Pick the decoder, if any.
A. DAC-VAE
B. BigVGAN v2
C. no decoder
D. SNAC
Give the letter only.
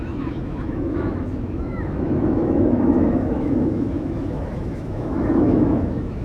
A